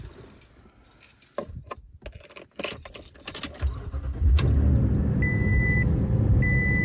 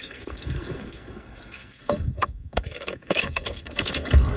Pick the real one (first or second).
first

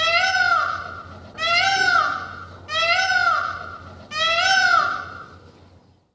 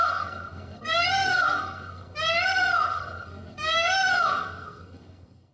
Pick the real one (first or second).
first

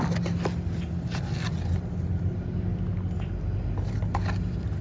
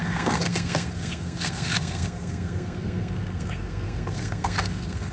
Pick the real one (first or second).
first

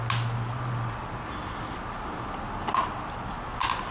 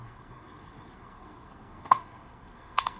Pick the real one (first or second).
first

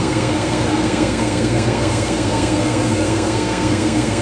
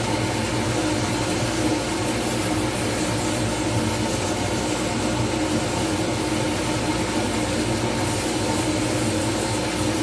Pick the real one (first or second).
second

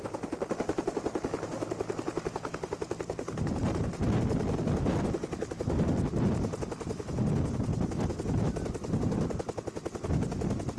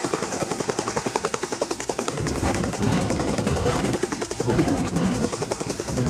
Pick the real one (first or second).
first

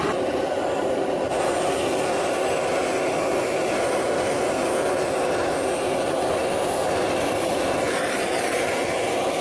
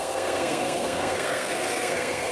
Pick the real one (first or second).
first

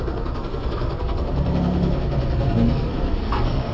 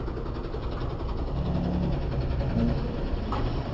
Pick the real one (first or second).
second